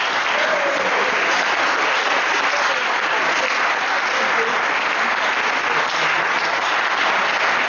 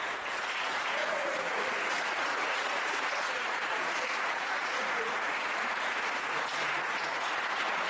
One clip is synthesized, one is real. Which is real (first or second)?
first